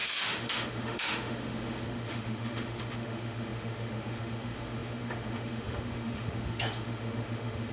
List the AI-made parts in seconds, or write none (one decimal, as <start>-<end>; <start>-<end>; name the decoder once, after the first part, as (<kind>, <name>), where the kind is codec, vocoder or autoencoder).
0.0-7.7 (autoencoder, DAC-VAE)

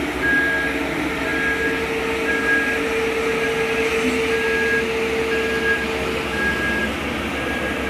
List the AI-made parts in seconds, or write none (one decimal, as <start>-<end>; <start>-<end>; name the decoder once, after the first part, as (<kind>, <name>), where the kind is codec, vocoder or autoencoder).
none